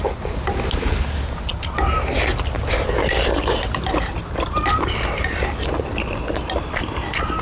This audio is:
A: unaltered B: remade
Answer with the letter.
A